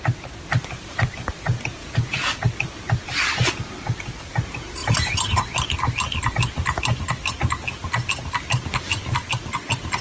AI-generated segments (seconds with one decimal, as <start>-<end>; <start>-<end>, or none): 1.7-2.5